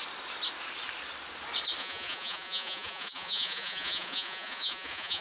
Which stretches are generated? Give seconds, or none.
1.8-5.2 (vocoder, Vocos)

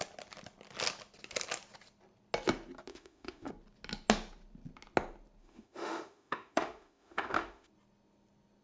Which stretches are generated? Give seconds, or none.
2.9-3.5 (autoencoder, DAC-VAE); 5.4-7.7

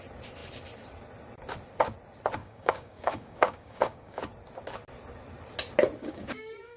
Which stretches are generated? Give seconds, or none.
2.4-4.2 (codec, DAC); 6.0-6.8